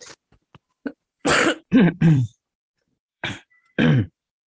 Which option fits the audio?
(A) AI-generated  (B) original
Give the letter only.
A